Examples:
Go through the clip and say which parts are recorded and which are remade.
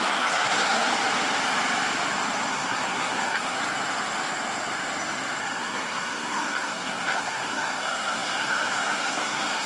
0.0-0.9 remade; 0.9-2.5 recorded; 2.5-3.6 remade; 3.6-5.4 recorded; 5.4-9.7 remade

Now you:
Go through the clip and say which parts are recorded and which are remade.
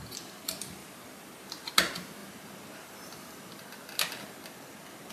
0.0-0.8 recorded; 0.8-1.7 remade; 1.7-5.1 recorded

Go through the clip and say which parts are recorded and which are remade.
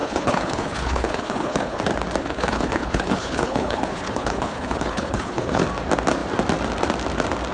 0.0-1.8 remade; 1.8-2.2 recorded; 2.2-5.6 remade; 5.6-7.5 recorded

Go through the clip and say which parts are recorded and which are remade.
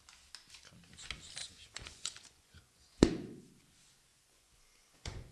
0.0-1.4 recorded; 1.4-3.4 remade; 3.4-4.1 recorded; 4.1-5.3 remade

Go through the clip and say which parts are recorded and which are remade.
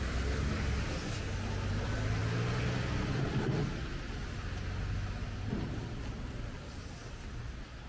0.0-7.9 recorded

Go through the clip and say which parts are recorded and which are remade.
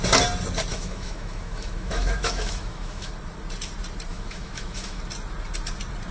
0.0-0.7 recorded; 0.7-3.1 remade; 3.1-4.1 recorded; 4.1-5.0 remade; 5.0-6.1 recorded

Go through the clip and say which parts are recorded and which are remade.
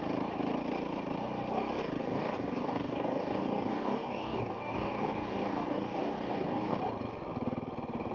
0.0-2.0 recorded; 2.0-6.8 remade; 6.8-8.1 recorded